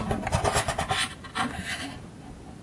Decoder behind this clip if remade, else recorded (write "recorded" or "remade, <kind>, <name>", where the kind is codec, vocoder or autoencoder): recorded